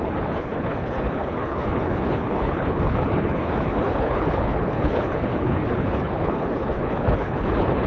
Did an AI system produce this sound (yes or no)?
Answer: yes